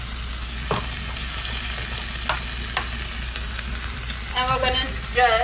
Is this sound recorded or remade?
recorded